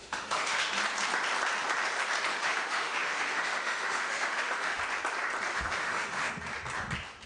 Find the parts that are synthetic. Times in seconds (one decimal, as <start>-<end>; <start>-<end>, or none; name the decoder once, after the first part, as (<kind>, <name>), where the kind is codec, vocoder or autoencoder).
0.0-0.7 (autoencoder, DAC-VAE); 2.3-4.8; 5.5-6.3